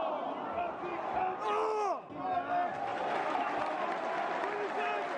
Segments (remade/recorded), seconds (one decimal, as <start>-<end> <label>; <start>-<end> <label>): 0.0-5.2 recorded